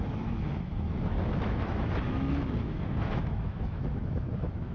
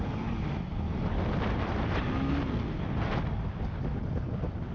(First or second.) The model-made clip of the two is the first